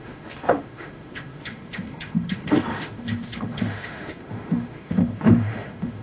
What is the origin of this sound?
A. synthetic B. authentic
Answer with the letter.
A